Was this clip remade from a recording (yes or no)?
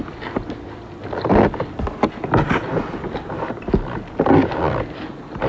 no